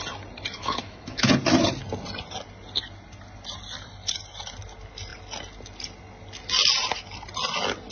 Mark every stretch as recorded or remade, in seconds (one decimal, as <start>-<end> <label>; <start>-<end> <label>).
0.0-0.6 recorded; 0.6-1.3 remade; 1.3-7.9 recorded